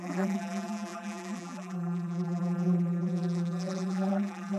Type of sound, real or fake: fake